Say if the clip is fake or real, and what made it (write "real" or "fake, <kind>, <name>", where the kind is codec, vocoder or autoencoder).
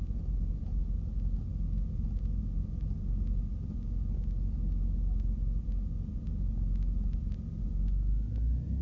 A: real